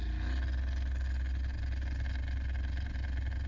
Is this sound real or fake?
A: real